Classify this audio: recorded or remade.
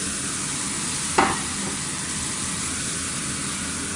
recorded